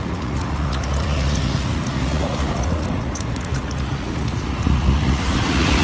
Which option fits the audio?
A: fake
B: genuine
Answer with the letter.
A